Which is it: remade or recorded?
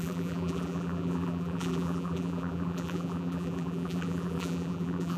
remade